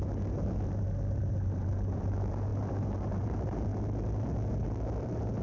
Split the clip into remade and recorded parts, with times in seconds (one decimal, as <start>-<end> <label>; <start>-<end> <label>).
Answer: 0.0-3.7 remade; 3.7-5.0 recorded; 5.0-5.4 remade